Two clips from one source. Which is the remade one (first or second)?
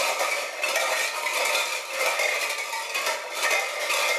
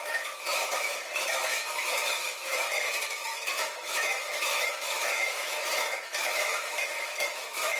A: second